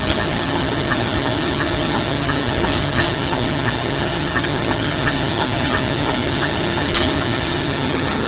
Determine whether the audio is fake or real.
fake